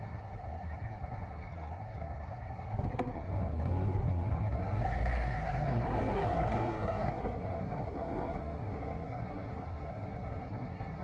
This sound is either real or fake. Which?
fake